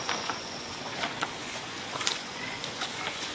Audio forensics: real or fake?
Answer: fake